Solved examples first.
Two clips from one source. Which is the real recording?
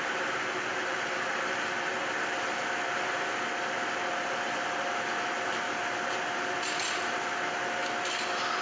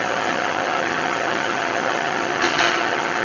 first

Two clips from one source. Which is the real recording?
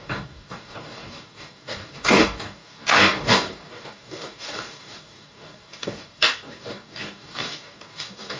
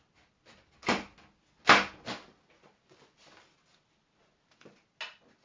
second